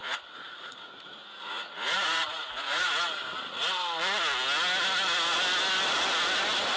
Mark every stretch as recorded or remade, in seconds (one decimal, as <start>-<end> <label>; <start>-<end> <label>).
0.0-2.9 remade; 2.9-6.8 recorded